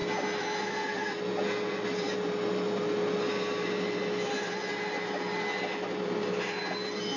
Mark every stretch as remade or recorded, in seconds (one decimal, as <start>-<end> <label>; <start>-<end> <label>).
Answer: 0.0-7.2 recorded